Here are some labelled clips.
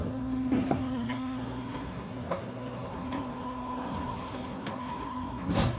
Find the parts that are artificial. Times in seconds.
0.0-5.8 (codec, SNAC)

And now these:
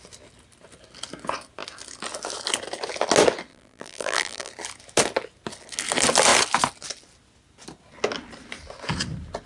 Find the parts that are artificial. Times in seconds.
3.5-4.5 (vocoder, BigVGAN v2)

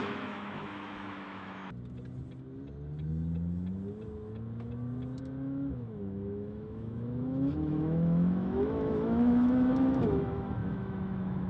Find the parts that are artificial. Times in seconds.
0.0-1.6 (autoencoder, DAC-VAE); 5.2-11.5

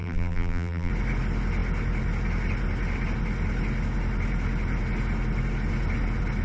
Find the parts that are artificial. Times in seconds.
0.0-0.9 (vocoder, BigVGAN v2)